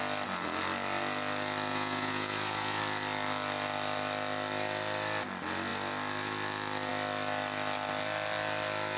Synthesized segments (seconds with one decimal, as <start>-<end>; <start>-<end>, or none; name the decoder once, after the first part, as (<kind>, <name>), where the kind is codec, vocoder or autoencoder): 1.7-2.8 (vocoder, Vocos)